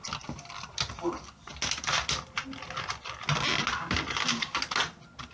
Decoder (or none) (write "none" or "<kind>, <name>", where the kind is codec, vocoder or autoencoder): none